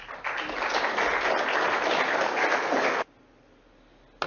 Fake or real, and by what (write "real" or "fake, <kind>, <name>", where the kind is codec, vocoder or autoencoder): real